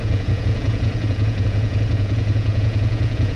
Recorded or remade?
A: remade